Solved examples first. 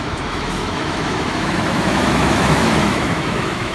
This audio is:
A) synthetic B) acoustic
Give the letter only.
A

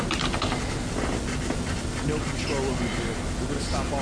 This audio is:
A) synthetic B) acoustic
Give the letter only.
B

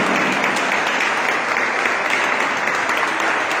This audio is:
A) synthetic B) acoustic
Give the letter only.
B